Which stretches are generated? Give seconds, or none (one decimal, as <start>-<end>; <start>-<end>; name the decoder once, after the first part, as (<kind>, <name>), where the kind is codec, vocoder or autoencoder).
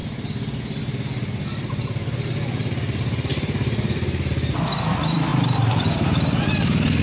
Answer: 1.7-7.0 (vocoder, BigVGAN v2)